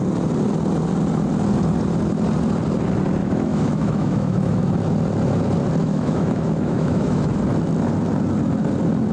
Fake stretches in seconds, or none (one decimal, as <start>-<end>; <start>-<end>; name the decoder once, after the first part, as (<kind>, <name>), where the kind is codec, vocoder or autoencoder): 3.2-4.7 (autoencoder, DAC-VAE); 5.8-7.4